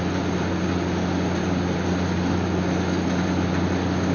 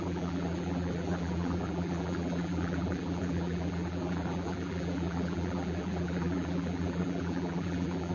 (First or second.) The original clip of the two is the first